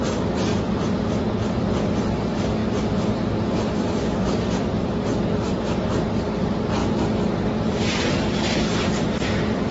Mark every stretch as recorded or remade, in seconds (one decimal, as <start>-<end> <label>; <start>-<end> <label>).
0.0-0.5 recorded; 0.5-2.0 remade; 2.0-9.7 recorded